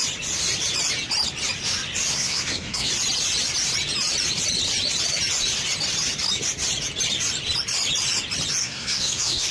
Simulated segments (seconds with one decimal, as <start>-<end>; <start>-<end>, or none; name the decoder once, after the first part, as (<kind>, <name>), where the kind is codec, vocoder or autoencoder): 2.1-2.9 (codec, SNAC); 8.6-9.5